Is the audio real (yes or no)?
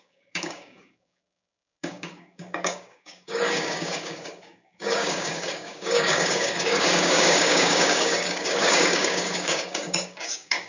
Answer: no